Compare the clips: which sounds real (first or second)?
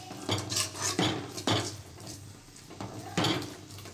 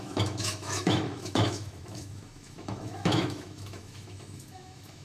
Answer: first